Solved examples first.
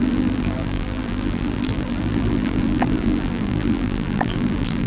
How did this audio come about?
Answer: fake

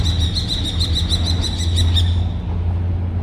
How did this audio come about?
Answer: real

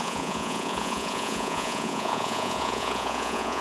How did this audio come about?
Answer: fake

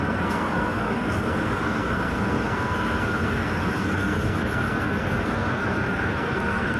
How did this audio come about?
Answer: fake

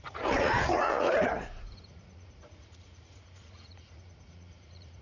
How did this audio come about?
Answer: fake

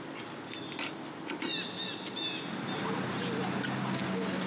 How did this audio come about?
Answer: real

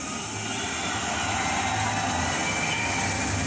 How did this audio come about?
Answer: real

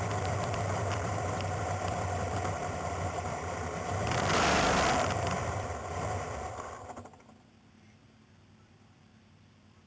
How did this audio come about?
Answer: fake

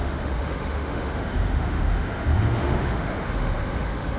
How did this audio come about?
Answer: fake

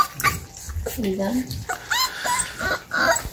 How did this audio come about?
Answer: real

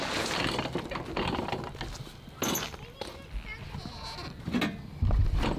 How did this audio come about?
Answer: real